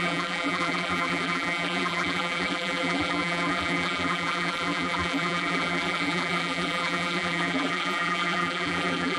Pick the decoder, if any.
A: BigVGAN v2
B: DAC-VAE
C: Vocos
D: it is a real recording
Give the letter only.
A